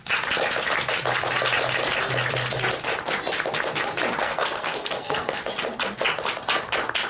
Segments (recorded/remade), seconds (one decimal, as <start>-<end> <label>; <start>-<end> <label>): 0.0-4.2 recorded; 4.2-5.4 remade; 5.4-7.1 recorded